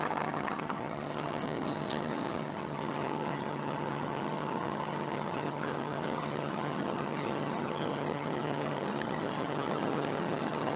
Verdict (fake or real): fake